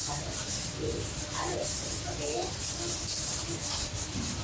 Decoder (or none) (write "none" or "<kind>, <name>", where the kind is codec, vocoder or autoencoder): vocoder, BigVGAN v2